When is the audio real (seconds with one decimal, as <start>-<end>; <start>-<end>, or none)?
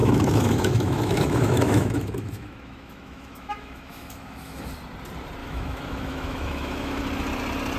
4.7-5.4; 7.0-7.8